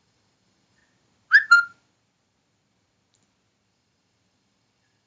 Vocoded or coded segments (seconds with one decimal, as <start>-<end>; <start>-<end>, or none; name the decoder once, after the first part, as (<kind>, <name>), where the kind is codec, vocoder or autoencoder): 0.0-0.8 (vocoder, BigVGAN v2); 3.7-5.1